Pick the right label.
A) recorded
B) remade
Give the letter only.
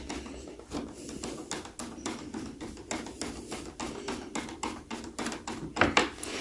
A